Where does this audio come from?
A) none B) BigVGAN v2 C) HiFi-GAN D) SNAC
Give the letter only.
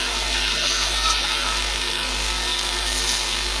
D